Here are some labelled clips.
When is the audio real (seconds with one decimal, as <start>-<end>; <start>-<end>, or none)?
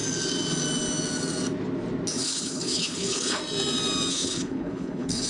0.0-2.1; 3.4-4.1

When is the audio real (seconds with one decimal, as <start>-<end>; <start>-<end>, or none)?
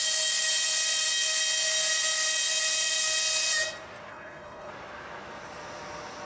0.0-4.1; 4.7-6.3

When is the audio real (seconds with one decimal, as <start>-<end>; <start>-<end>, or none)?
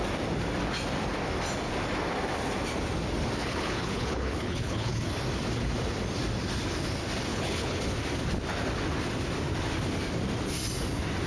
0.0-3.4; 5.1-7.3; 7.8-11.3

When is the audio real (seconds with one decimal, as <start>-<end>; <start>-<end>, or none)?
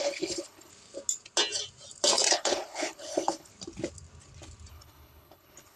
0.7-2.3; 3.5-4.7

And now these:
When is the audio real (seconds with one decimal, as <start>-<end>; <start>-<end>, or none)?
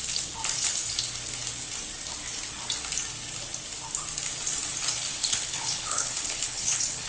0.0-5.1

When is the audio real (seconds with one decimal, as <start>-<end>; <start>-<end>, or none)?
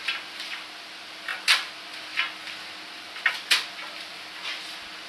0.0-5.1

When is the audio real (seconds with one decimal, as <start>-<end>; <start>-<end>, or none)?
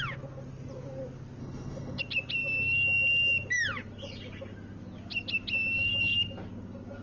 0.0-1.4; 2.0-7.0